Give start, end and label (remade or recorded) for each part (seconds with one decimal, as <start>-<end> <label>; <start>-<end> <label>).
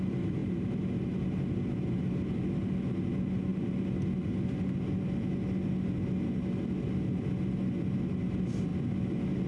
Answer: 0.0-9.5 recorded